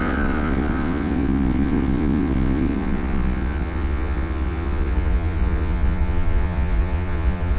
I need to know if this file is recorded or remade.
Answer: remade